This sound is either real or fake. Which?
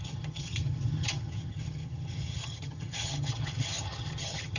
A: fake